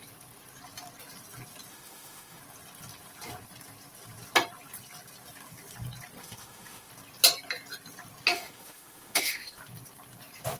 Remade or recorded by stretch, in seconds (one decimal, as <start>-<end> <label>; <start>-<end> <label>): 0.0-1.7 recorded; 1.7-2.4 remade; 2.4-6.2 recorded; 6.2-6.9 remade; 6.9-8.3 recorded; 8.3-9.6 remade; 9.6-10.6 recorded